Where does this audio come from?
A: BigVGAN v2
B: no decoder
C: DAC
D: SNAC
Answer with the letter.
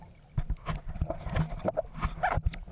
B